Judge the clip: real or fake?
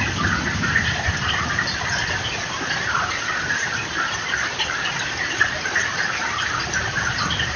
real